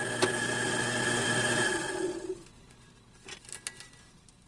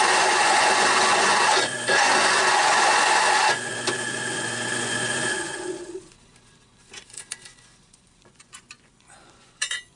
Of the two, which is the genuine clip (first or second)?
first